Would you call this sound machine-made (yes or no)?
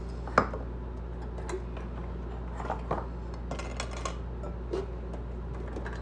no